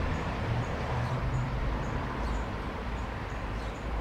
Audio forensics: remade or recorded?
remade